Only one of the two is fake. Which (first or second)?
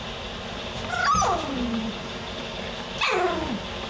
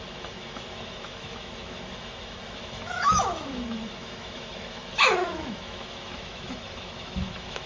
second